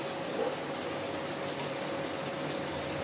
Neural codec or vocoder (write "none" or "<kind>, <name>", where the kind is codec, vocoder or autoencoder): none